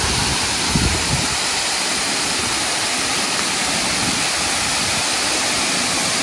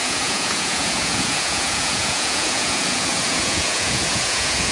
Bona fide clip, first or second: first